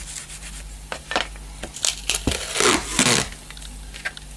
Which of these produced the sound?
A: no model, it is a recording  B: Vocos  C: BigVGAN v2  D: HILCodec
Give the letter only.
A